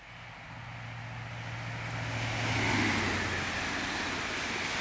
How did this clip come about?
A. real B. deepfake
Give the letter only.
A